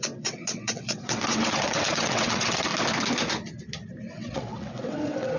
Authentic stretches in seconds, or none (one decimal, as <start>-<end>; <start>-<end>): 2.7-4.1